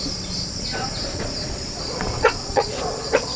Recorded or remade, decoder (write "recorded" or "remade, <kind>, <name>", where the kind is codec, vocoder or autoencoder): remade, vocoder, Vocos